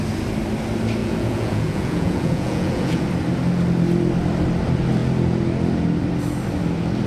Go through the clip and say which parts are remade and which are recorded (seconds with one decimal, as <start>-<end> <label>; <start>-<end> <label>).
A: 0.0-1.0 recorded; 1.0-3.0 remade; 3.0-7.1 recorded